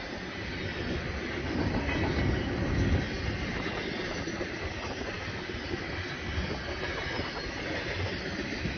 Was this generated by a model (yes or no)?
no